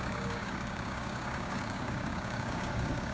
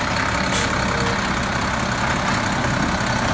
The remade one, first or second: first